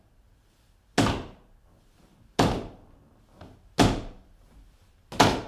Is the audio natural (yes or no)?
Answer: yes